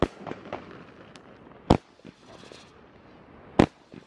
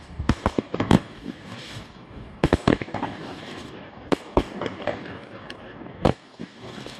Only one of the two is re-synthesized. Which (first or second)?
second